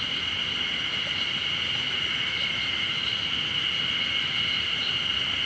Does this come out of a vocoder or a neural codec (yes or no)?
no